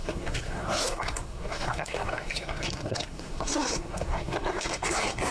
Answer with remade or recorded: remade